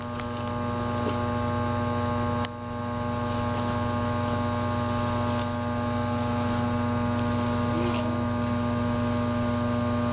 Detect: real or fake real